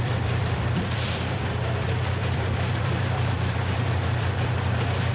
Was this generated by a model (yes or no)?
yes